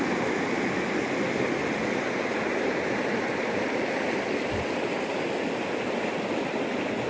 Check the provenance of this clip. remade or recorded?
recorded